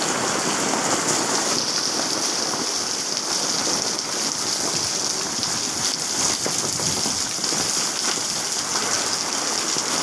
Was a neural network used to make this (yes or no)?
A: no